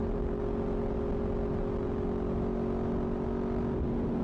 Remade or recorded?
recorded